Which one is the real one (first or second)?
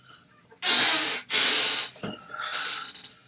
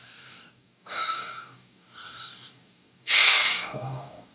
first